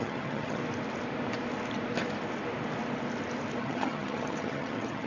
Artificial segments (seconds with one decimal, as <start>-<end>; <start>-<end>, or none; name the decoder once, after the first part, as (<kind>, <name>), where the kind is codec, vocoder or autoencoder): 0.0-0.6 (vocoder, HiFi-GAN); 3.6-5.1